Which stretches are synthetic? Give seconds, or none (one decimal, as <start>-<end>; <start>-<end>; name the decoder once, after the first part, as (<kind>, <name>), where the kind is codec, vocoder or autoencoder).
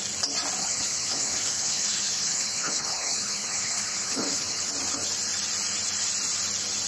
0.6-4.7 (codec, HILCodec)